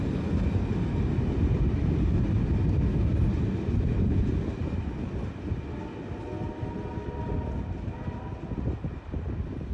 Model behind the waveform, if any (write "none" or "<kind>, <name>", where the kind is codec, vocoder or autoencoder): none